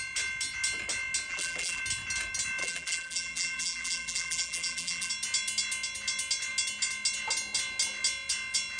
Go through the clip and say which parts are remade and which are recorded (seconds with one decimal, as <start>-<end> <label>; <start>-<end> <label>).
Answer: 0.0-1.3 recorded; 1.3-1.8 remade; 1.8-2.6 recorded; 2.6-5.1 remade; 5.1-8.8 recorded